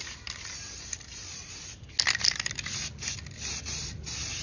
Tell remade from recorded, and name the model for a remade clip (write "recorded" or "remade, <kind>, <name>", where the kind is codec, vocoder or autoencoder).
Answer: recorded